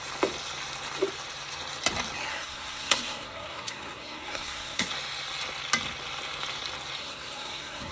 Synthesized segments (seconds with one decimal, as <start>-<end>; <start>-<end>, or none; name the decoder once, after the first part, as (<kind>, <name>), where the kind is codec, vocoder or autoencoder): 2.3-4.9 (codec, SNAC); 7.0-7.9